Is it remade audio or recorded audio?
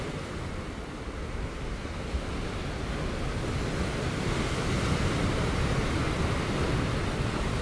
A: recorded